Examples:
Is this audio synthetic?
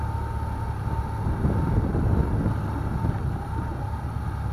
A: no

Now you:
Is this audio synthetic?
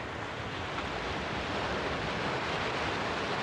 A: no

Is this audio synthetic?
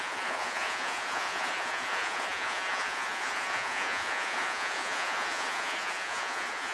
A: yes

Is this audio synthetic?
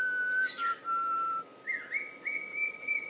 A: no